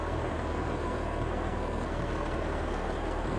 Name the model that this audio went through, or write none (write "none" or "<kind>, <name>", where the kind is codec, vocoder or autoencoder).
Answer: codec, SNAC